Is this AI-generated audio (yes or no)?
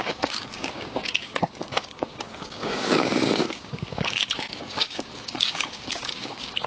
yes